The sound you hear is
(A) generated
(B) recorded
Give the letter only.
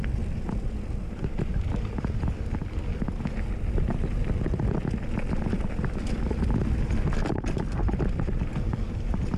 B